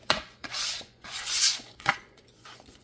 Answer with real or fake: fake